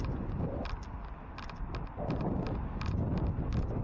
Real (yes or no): yes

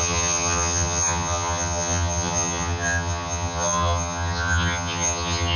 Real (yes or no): no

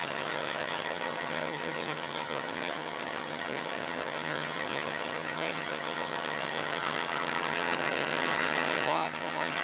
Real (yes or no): no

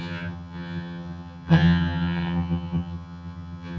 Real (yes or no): no